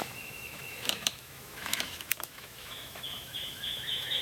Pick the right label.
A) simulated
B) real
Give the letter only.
A